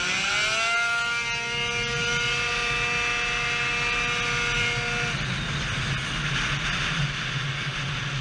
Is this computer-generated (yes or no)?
no